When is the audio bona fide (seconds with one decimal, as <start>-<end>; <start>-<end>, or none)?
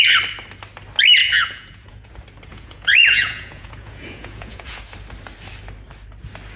0.0-1.2; 2.1-2.5; 4.8-6.6